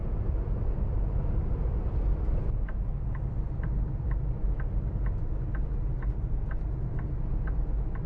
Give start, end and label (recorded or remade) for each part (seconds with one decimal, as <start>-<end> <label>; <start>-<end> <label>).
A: 0.0-4.8 remade; 4.8-8.1 recorded